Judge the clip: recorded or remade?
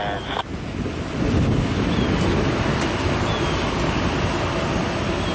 recorded